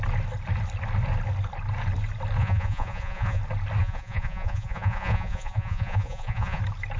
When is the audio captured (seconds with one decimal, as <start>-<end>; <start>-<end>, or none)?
0.0-2.4; 3.4-3.8; 6.6-7.0